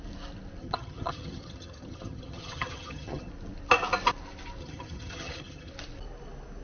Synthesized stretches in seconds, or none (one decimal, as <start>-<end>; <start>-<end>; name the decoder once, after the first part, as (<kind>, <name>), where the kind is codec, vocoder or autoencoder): 0.6-3.3 (vocoder, HiFi-GAN); 4.6-5.7